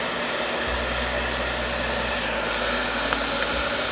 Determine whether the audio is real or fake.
real